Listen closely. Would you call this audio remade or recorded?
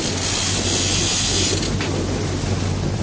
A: recorded